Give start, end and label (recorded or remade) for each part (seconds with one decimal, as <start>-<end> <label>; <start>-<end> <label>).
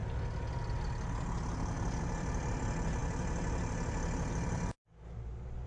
0.0-5.7 recorded